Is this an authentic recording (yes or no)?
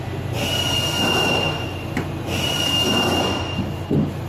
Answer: yes